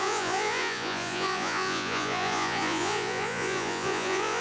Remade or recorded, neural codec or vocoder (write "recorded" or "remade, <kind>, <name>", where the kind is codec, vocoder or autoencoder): remade, vocoder, Vocos